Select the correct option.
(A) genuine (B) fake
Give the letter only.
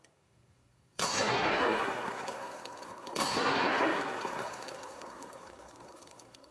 B